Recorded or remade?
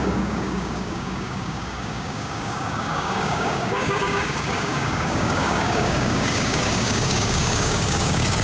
remade